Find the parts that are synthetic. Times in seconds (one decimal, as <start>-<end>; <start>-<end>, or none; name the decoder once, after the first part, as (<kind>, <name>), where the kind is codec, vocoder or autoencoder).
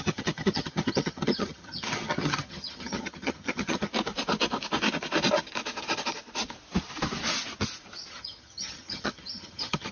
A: 0.0-3.9 (vocoder, HiFi-GAN); 8.1-9.9